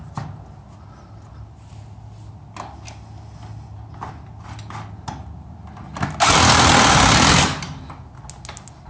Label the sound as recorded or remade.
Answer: recorded